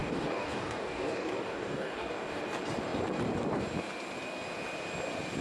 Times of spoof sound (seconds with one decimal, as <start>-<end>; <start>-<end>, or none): 0.0-2.4